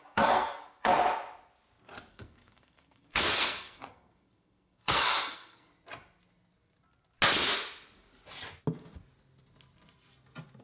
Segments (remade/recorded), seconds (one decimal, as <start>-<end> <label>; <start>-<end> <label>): 0.0-0.9 remade; 0.9-2.1 recorded; 2.1-5.7 remade; 5.7-10.6 recorded